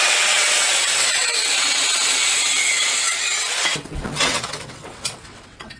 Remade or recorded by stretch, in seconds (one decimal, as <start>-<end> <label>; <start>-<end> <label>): 0.0-5.8 remade